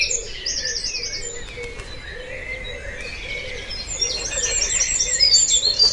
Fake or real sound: real